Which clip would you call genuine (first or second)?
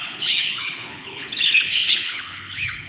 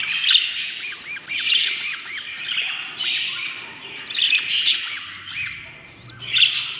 second